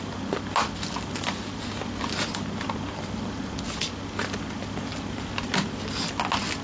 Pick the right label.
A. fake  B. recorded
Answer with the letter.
B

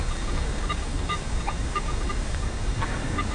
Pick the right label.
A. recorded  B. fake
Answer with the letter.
B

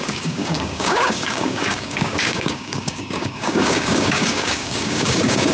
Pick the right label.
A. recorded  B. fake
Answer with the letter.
B